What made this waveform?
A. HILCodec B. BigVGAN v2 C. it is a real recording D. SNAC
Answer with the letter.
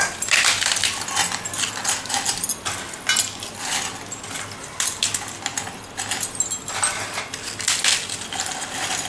C